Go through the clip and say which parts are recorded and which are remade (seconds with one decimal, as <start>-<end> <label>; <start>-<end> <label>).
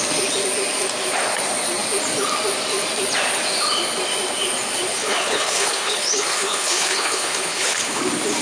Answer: 0.0-4.9 recorded; 4.9-8.0 remade; 8.0-8.4 recorded